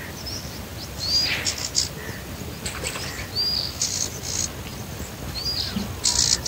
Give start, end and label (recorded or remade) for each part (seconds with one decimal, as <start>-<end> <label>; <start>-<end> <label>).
0.0-6.5 recorded